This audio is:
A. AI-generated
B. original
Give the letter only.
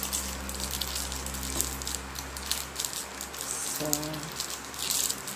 B